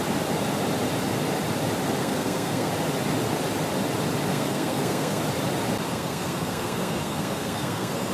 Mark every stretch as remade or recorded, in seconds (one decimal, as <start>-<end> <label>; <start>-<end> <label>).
0.0-2.0 recorded; 2.0-2.7 remade; 2.7-4.3 recorded; 4.3-5.2 remade; 5.2-5.9 recorded; 5.9-8.1 remade